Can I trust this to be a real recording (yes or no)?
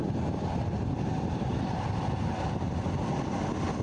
yes